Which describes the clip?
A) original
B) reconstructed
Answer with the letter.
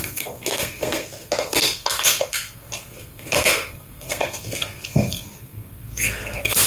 B